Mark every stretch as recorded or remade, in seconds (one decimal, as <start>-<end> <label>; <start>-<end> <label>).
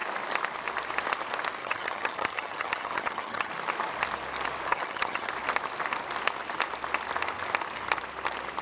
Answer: 0.0-1.6 recorded; 1.6-3.5 remade; 3.5-4.7 recorded; 4.7-5.3 remade; 5.3-8.6 recorded